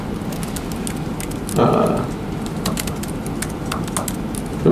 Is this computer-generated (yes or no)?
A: no